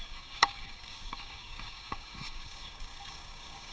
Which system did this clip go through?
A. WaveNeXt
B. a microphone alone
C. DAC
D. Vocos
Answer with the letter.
C